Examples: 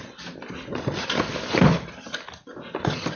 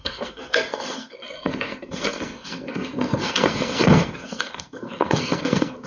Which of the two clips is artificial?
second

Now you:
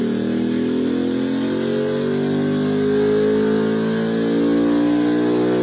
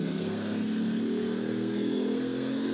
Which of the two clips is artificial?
second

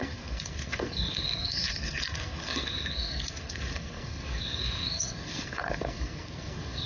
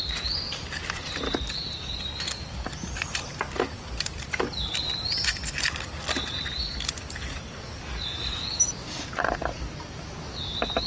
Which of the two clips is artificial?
first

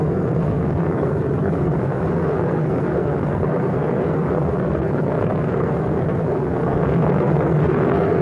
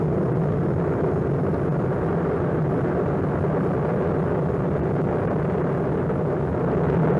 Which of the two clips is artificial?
first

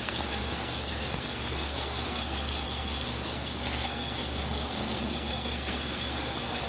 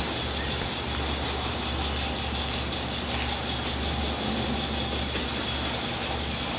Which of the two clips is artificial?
first